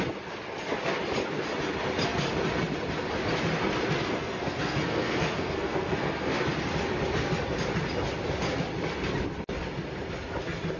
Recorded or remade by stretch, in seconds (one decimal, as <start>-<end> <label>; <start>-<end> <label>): 0.0-4.1 recorded; 4.1-6.4 remade; 6.4-10.8 recorded